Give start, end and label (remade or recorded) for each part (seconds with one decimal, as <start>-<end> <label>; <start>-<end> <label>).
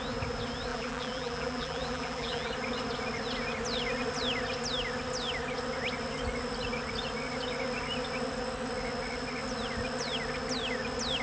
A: 0.0-0.7 recorded; 0.7-2.5 remade; 2.5-11.2 recorded